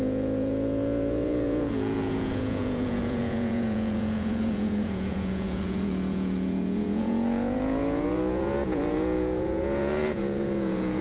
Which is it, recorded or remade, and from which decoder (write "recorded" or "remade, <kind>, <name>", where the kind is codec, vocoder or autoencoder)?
remade, vocoder, Vocos